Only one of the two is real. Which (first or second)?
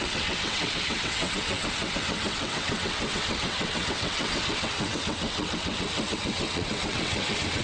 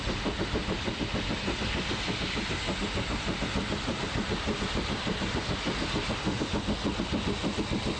second